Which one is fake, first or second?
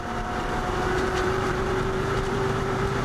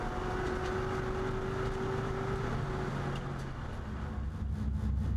first